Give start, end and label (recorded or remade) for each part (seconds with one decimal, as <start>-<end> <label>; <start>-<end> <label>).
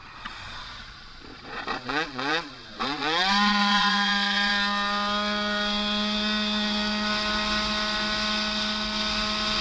0.0-4.5 remade; 4.5-9.6 recorded